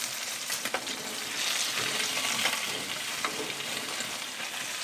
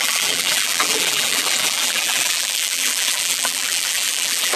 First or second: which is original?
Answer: first